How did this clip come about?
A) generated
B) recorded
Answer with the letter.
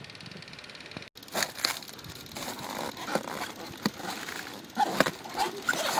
B